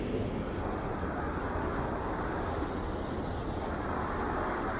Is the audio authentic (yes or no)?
yes